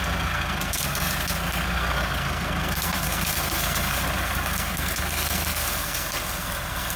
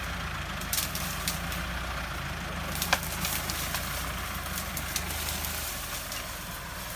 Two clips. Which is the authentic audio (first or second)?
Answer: second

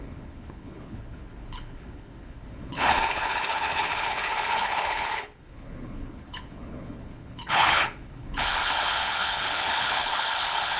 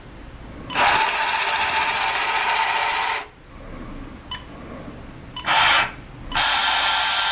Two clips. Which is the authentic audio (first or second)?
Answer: second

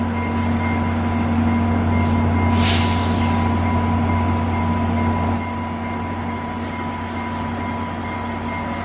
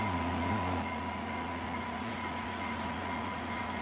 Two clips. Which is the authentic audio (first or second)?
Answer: first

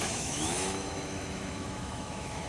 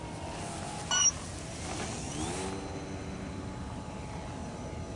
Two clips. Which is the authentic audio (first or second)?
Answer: second